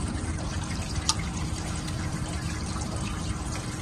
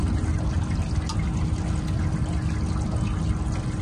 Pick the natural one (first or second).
second